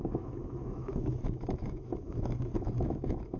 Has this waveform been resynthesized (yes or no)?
yes